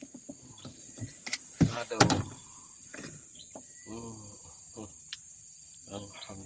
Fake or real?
fake